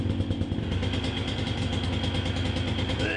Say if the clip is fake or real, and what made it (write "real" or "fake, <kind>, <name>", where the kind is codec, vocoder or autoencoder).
real